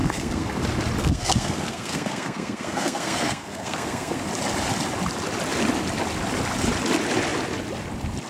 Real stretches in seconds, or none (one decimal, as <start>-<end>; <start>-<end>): 0.6-1.0; 4.3-8.3